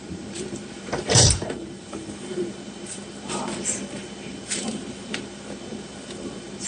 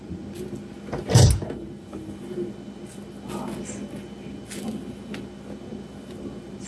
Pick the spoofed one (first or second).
first